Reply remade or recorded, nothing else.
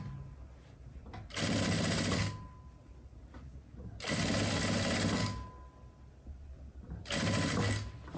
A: recorded